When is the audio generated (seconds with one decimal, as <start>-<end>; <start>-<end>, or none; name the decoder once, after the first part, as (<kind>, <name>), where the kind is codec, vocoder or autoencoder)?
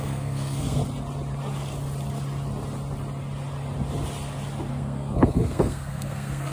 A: 0.0-0.8 (codec, SNAC); 4.7-6.5